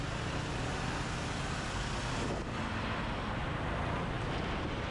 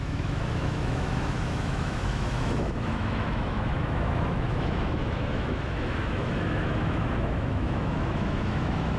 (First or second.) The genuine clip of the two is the first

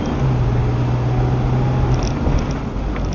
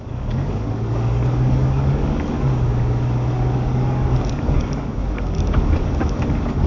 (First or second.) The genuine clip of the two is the first